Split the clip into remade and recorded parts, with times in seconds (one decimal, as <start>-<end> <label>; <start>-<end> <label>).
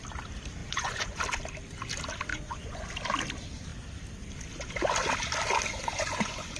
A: 0.0-0.6 recorded; 0.6-1.2 remade; 1.2-2.3 recorded; 2.3-2.9 remade; 2.9-5.7 recorded; 5.7-6.6 remade